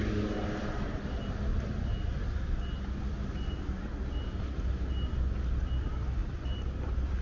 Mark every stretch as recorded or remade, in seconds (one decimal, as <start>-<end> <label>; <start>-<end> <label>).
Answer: 0.0-6.2 recorded; 6.2-7.2 remade